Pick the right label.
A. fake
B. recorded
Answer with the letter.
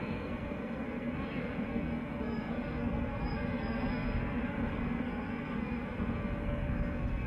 A